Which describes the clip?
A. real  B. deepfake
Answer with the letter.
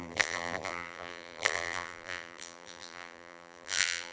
B